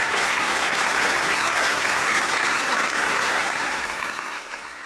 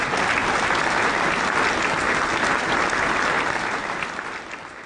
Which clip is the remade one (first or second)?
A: first